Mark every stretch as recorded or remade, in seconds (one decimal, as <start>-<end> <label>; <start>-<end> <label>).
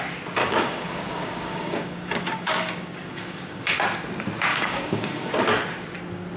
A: 0.0-0.4 recorded; 0.4-3.7 remade; 3.7-4.5 recorded; 4.5-5.3 remade; 5.3-6.4 recorded